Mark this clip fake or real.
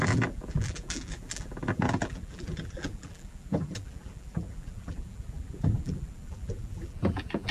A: fake